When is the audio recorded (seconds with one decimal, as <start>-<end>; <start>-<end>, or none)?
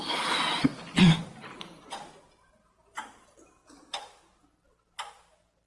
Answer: 0.0-5.7